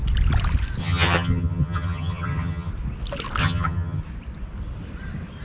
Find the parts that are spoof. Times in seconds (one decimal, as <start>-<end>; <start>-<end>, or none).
0.8-2.7; 3.4-4.0